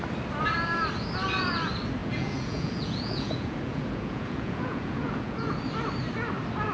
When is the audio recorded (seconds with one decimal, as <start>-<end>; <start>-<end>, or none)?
0.0-2.0; 5.6-6.7